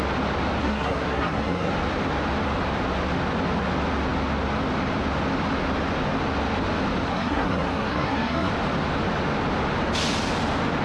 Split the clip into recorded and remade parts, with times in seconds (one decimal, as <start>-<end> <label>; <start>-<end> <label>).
0.0-0.6 recorded; 0.6-1.7 remade; 1.7-7.1 recorded; 7.1-8.5 remade; 8.5-10.8 recorded